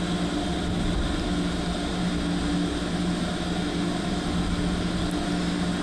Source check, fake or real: real